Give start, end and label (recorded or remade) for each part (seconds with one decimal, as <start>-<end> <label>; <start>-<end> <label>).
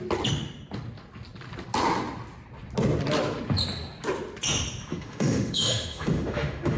0.0-4.9 recorded; 4.9-6.8 remade